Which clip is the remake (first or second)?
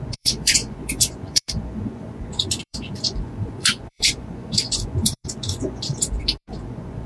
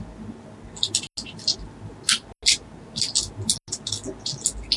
first